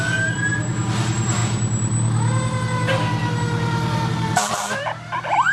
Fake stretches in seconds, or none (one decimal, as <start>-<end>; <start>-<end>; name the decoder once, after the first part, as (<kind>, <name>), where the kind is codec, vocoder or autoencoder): 0.0-1.4 (vocoder, BigVGAN v2); 4.1-5.5